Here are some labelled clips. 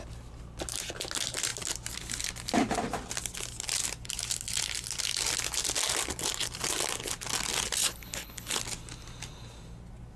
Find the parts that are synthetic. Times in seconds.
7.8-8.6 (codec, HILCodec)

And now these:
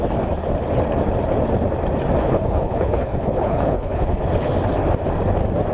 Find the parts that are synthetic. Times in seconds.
2.2-4.2 (codec, HILCodec)

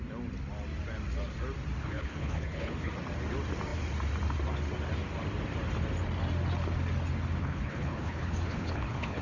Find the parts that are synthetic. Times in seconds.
1.8-2.9 (codec, HILCodec); 7.4-9.2

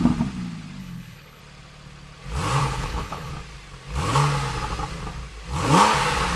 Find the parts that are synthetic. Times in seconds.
0.8-1.4 (codec, HILCodec); 2.6-3.3

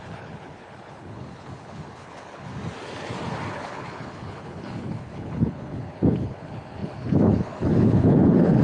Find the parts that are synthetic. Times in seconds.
0.0-2.5 (codec, HILCodec); 3.5-8.6

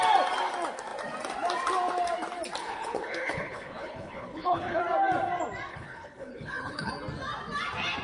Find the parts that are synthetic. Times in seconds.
2.6-4.8 (codec, HILCodec); 5.7-6.9